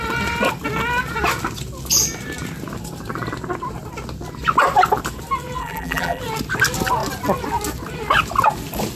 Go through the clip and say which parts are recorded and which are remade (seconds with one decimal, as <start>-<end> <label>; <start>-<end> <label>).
0.0-5.6 recorded; 5.6-6.2 remade; 6.2-9.0 recorded